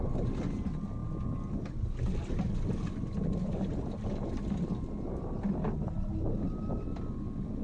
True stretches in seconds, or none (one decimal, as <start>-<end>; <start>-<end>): 0.0-7.6